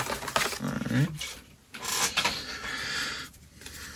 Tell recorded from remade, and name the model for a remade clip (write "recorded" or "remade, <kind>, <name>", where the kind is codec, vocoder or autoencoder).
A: remade, vocoder, BigVGAN v2